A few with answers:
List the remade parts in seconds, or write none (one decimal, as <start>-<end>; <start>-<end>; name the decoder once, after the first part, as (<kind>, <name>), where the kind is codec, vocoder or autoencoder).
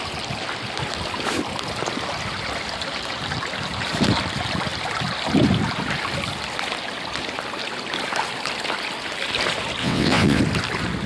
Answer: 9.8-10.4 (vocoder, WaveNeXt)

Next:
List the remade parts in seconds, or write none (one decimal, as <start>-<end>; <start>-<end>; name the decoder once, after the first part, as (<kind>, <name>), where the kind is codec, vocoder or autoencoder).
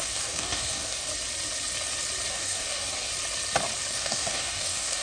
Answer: 0.0-1.1 (codec, DAC); 2.3-3.1; 3.9-5.0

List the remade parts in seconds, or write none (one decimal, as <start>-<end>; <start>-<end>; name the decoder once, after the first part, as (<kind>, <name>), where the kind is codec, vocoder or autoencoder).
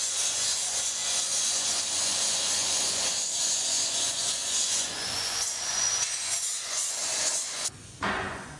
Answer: 0.0-8.6 (vocoder, Vocos)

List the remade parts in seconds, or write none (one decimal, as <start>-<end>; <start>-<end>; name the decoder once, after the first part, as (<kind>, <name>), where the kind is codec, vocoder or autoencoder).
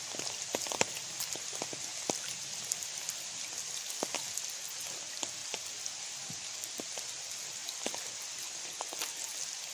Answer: none